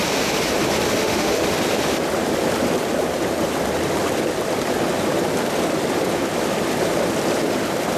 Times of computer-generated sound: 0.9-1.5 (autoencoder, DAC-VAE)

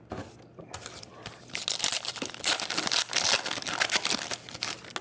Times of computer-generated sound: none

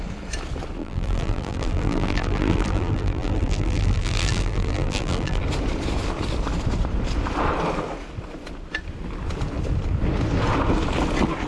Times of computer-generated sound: 0.8-5.4 (vocoder, BigVGAN v2)